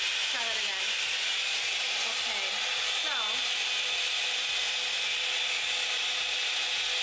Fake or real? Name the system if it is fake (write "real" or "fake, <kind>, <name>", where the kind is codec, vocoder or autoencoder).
real